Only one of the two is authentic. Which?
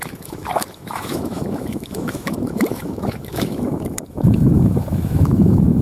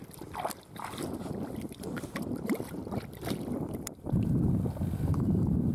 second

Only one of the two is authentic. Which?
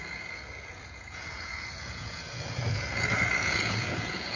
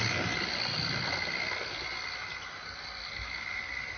second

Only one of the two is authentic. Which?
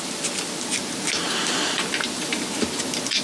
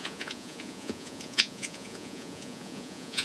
first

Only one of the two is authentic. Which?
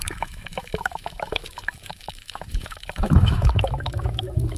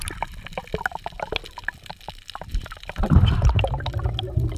second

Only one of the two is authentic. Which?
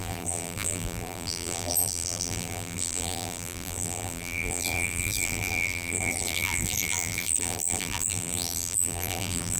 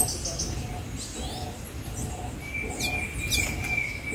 second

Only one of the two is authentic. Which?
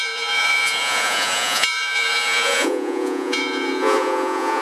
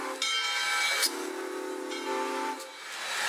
second